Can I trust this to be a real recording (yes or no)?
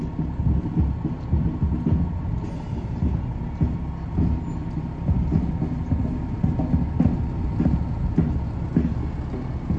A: yes